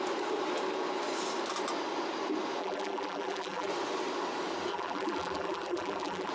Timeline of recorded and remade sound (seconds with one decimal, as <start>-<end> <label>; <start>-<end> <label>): 0.0-2.6 recorded; 2.6-3.7 remade; 3.7-4.7 recorded; 4.7-6.3 remade